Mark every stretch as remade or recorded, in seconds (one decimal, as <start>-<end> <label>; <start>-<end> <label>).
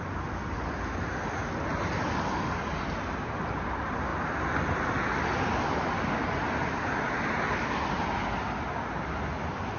0.0-9.8 recorded